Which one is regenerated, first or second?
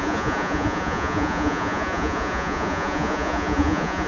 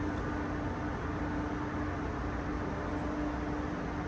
first